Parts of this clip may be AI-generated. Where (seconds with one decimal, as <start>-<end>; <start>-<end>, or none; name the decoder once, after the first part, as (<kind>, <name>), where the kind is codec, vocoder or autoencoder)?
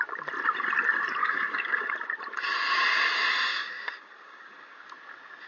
1.2-1.9 (codec, DAC); 3.5-4.9